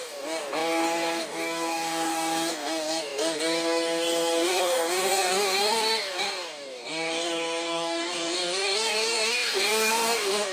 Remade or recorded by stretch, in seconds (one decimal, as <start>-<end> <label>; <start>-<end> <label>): 0.0-10.5 remade

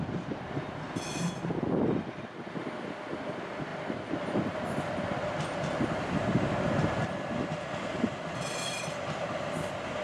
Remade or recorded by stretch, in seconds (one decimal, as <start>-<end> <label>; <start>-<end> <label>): 0.0-10.0 recorded